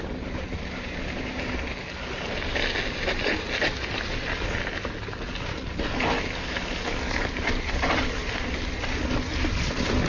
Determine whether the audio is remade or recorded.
recorded